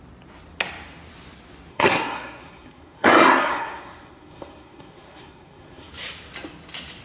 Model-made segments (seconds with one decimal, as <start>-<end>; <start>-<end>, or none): 1.7-5.9